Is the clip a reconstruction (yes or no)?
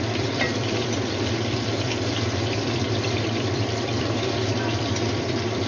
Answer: yes